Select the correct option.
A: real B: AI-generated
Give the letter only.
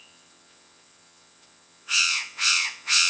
B